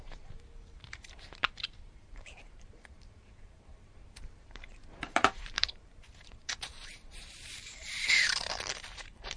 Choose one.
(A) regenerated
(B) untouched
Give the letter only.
A